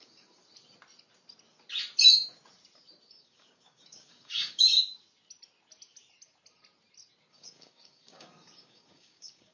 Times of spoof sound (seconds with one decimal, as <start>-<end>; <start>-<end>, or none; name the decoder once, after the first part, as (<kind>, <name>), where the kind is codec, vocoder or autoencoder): 0.0-0.4 (codec, DAC); 3.1-4.7; 7.3-9.5